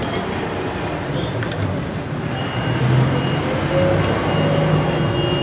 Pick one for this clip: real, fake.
real